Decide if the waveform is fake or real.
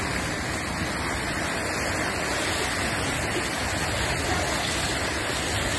real